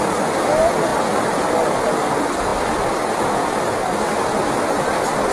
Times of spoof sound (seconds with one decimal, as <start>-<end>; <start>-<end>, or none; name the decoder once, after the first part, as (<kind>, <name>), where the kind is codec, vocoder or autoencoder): none